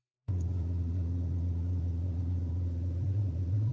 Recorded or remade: remade